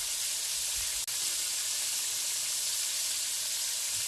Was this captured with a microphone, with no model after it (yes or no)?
yes